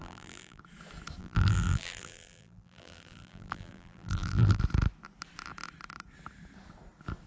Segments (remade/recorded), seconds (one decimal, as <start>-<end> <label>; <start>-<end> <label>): 0.0-0.6 remade; 0.6-1.2 recorded; 1.2-4.6 remade; 4.6-7.3 recorded